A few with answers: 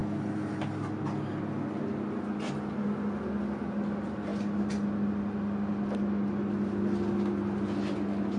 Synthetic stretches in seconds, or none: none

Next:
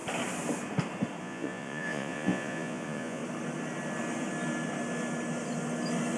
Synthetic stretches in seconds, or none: 1.2-3.2 (vocoder, Vocos)

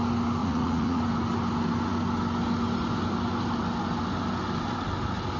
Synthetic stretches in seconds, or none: 0.4-1.0 (vocoder, Vocos)

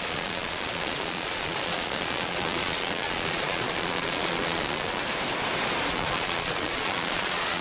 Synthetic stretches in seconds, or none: 0.0-5.0 (vocoder, Vocos); 5.9-7.6

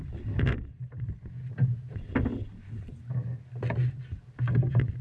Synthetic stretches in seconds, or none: none

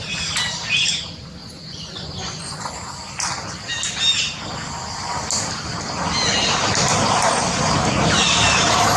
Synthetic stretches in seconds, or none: 1.4-2.7 (vocoder, Vocos)

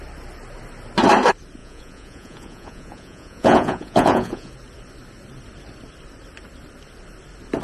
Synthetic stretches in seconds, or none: 1.6-4.5 (vocoder, Vocos)